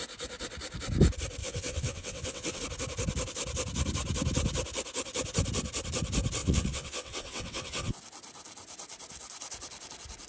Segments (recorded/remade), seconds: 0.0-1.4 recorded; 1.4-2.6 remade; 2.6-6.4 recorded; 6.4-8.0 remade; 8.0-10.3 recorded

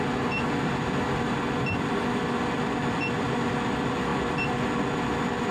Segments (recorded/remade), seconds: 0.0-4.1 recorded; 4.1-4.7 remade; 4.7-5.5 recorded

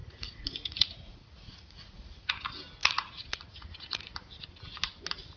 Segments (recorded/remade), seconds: 0.0-2.3 remade; 2.3-2.8 recorded; 2.8-4.0 remade; 4.0-5.4 recorded